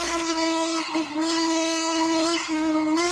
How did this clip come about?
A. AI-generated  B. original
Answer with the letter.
A